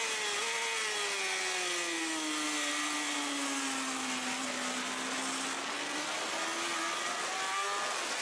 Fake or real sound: real